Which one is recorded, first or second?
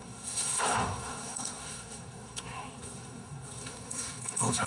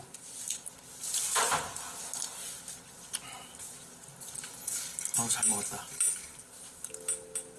second